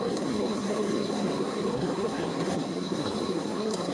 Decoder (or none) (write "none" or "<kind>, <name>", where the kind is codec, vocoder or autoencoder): codec, SNAC